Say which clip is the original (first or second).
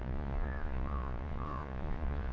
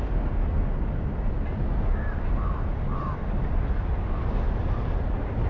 second